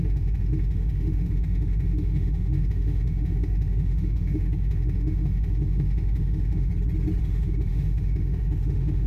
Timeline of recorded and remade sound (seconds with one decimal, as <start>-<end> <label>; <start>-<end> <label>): 0.0-6.7 remade; 6.7-7.2 recorded; 7.2-9.1 remade